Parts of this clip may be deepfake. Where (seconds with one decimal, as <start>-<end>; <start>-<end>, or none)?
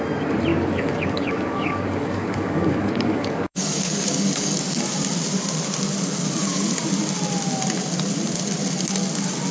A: 0.5-4.8